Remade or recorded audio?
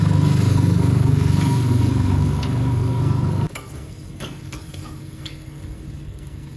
remade